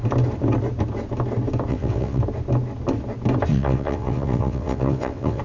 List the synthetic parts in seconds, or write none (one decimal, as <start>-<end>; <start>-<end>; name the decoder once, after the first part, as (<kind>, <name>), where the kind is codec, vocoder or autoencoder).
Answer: 1.7-2.2 (vocoder, WaveNeXt); 3.5-5.4